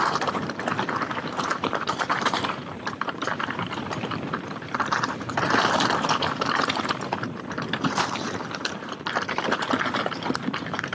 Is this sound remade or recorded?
remade